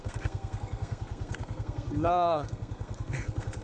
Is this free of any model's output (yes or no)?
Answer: no